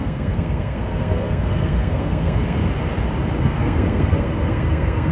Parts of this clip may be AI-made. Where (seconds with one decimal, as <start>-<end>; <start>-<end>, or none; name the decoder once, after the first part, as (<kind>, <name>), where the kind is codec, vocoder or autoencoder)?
0.0-2.6 (codec, SNAC); 3.4-5.1